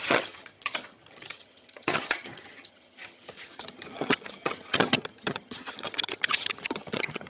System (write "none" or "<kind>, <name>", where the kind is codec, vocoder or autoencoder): vocoder, HiFi-GAN